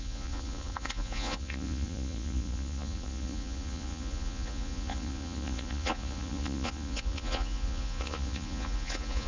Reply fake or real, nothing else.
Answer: fake